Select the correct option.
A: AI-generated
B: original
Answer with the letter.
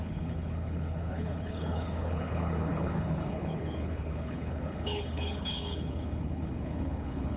A